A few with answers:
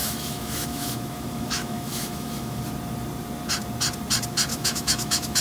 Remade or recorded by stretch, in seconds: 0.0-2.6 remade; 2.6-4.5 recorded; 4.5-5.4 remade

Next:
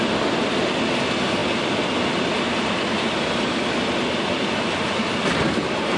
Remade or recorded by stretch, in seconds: 0.0-6.0 recorded

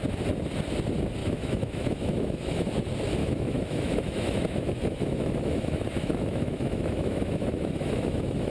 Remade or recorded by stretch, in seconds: 0.0-1.2 recorded; 1.2-2.7 remade; 2.7-3.2 recorded; 3.2-8.5 remade

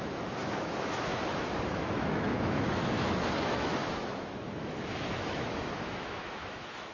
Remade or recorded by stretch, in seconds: 0.0-6.9 remade

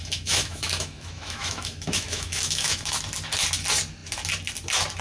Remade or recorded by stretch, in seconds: 0.0-3.0 remade; 3.0-5.0 recorded

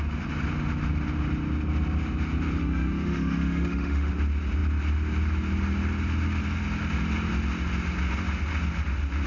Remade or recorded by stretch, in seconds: 0.0-2.6 recorded; 2.6-4.1 remade; 4.1-9.3 recorded

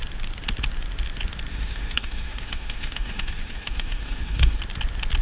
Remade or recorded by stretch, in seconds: 0.0-1.5 recorded; 1.5-4.6 remade; 4.6-5.2 recorded